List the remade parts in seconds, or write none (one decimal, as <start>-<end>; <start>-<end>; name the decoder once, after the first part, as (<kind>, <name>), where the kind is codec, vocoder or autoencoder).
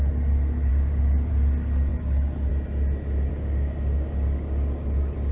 0.7-1.3 (codec, DAC); 3.3-5.3